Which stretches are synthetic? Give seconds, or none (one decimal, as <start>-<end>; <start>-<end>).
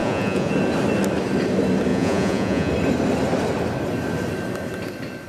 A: 0.0-0.5; 1.9-2.7